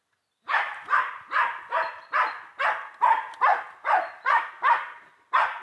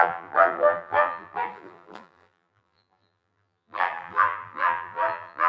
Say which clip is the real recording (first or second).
first